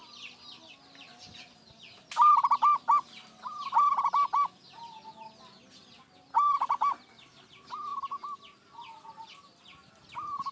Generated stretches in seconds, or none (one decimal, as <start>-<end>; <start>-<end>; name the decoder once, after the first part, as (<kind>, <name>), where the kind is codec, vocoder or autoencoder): none